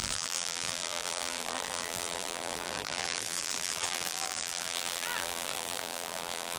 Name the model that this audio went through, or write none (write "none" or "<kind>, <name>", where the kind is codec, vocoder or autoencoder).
vocoder, BigVGAN v2